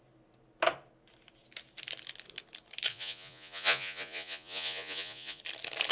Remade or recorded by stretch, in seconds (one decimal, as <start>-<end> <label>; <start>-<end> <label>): 0.0-2.9 recorded; 2.9-5.4 remade; 5.4-5.9 recorded